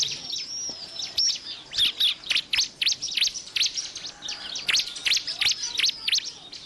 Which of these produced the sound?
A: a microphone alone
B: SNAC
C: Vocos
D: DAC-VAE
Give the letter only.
A